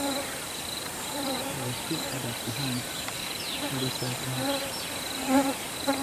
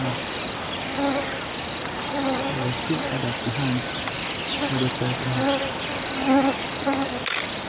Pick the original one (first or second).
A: second